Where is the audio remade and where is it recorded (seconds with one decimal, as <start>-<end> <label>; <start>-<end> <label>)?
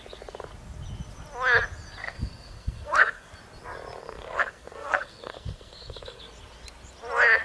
0.0-2.0 recorded; 2.0-3.3 remade; 3.3-4.0 recorded; 4.0-6.2 remade; 6.2-7.4 recorded